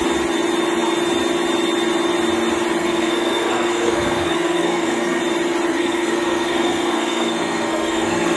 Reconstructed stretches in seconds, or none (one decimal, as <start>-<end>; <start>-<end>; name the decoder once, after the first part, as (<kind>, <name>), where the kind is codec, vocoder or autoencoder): 2.8-5.2 (codec, SNAC); 5.7-8.4